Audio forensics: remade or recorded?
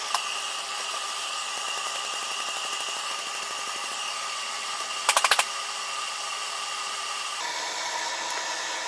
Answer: recorded